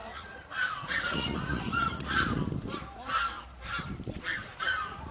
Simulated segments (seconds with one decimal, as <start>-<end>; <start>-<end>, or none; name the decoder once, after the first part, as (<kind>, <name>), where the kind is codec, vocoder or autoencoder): 0.0-2.4 (vocoder, Vocos); 4.3-5.1